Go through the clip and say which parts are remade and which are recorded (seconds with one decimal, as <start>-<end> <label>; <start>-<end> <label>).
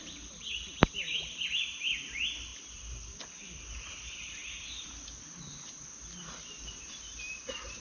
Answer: 0.0-2.5 recorded; 2.5-3.9 remade; 3.9-7.8 recorded